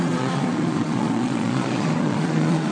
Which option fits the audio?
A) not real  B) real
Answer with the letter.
A